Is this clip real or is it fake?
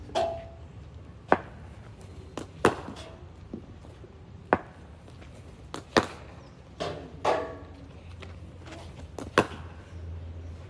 real